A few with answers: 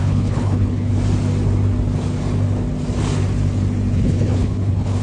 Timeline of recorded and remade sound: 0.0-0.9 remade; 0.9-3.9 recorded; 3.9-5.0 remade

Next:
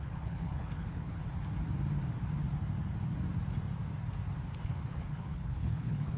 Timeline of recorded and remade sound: 0.0-1.2 remade; 1.2-4.6 recorded; 4.6-6.2 remade

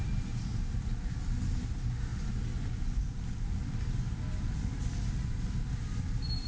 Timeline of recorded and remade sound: 0.0-6.5 recorded

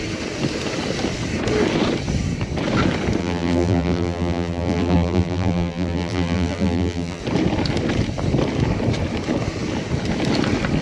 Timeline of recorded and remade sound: 0.0-3.2 recorded; 3.2-7.2 remade; 7.2-10.8 recorded